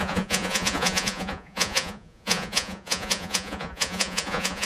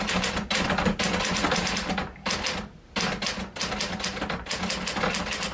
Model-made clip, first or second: first